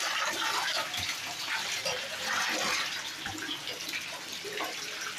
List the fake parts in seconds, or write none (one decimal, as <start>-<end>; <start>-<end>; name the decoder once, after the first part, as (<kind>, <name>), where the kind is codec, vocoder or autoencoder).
none